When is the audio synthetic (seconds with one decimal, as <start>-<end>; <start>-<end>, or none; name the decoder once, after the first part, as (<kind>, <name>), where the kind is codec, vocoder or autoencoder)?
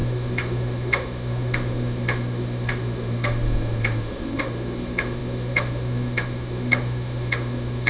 0.0-7.9 (autoencoder, DAC-VAE)